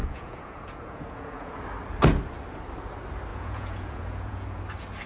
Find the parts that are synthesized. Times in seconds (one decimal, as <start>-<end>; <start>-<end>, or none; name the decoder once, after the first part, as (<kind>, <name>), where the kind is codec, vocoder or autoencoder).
0.0-1.6 (vocoder, Vocos); 3.3-4.6